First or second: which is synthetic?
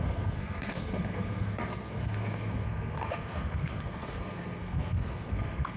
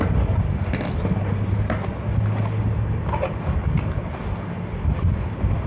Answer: first